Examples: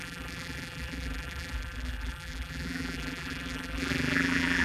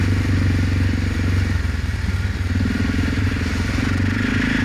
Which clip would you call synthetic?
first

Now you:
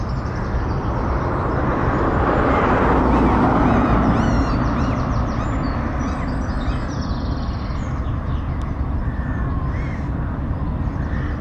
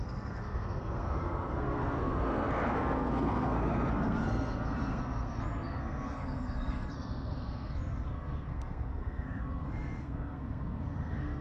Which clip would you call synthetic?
second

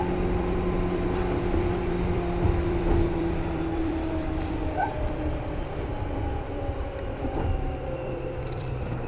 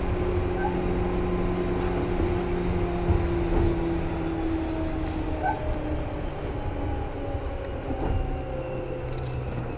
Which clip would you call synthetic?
first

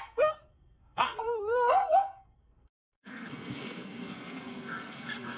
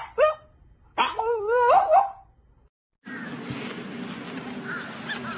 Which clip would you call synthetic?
first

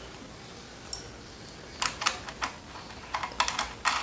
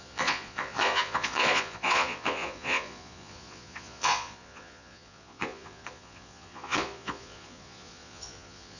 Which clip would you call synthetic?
second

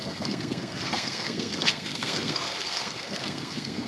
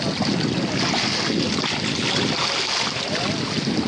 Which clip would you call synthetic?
first